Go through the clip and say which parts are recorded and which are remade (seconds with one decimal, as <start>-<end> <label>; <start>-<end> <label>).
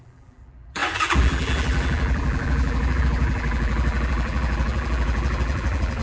0.0-6.0 remade